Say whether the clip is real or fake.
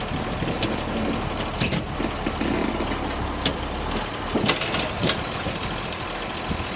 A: real